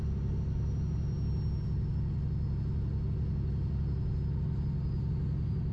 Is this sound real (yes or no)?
yes